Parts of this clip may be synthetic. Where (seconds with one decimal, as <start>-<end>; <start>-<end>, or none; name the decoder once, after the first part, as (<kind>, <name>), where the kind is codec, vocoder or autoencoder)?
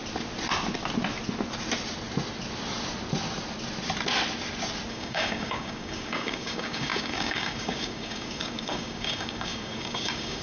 4.9-10.4 (codec, DAC)